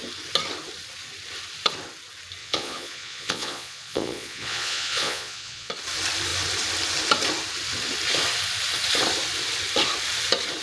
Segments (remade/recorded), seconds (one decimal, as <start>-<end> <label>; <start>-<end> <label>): 0.0-2.4 recorded; 2.4-5.7 remade; 5.7-10.6 recorded